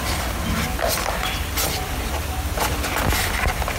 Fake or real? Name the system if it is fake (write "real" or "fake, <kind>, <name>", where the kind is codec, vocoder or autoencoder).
real